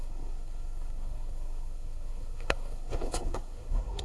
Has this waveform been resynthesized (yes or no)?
yes